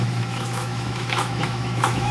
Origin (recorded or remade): remade